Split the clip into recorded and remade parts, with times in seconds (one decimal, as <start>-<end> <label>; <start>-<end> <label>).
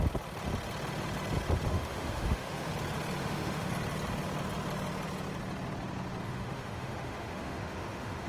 0.0-1.7 recorded; 1.7-2.7 remade; 2.7-3.2 recorded; 3.2-3.7 remade; 3.7-6.2 recorded; 6.2-8.3 remade